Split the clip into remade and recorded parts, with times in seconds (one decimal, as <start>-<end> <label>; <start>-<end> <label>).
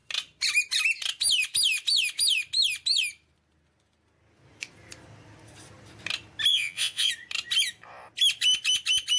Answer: 0.0-6.5 recorded; 6.5-7.1 remade; 7.1-9.2 recorded